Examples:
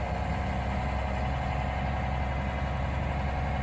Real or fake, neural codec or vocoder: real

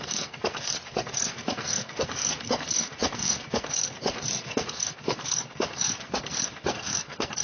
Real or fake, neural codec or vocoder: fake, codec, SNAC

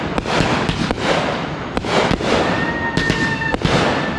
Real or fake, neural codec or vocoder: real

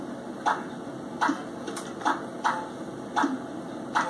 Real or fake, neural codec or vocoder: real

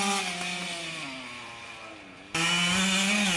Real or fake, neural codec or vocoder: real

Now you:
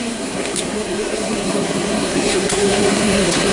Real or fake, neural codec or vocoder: fake, codec, SNAC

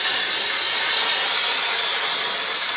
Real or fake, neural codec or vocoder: real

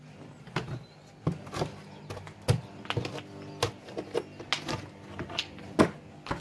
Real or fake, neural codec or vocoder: real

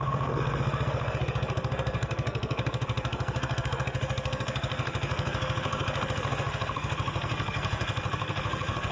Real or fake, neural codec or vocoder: fake, codec, SNAC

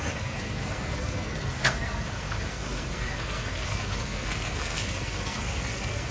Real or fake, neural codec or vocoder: fake, codec, SNAC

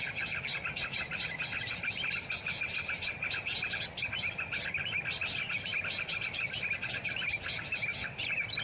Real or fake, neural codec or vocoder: real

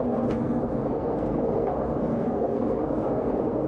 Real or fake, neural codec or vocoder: fake, codec, SNAC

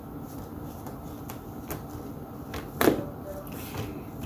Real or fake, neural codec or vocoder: real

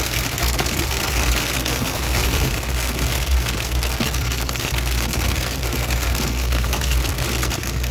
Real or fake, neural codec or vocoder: fake, codec, SNAC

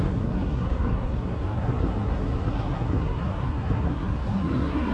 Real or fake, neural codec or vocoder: fake, codec, SNAC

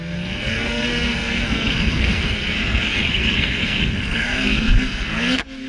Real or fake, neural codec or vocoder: fake, codec, SNAC